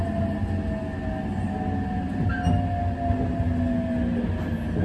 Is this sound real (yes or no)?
yes